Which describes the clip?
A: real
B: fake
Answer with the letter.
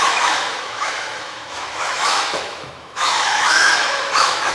B